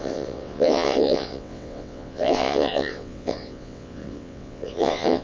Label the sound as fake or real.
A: fake